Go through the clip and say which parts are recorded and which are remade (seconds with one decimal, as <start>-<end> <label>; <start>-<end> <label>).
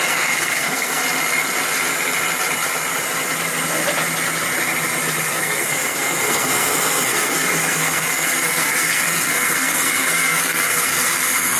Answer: 0.0-1.0 remade; 1.0-5.3 recorded; 5.3-11.6 remade